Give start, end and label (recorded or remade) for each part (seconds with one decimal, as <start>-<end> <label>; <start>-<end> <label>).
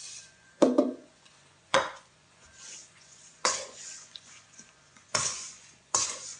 0.0-6.4 remade